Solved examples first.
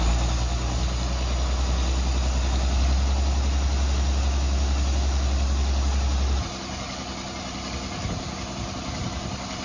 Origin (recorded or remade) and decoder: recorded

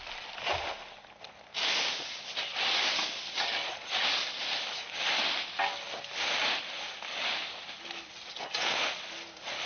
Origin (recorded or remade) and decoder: recorded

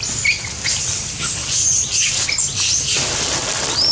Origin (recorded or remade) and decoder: recorded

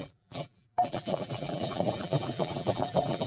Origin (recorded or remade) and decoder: remade, vocoder, BigVGAN v2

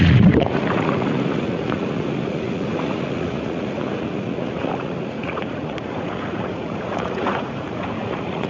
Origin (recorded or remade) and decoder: remade, vocoder, Vocos